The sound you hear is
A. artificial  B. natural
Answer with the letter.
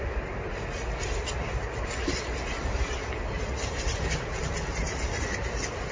B